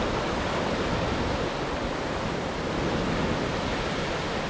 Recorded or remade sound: recorded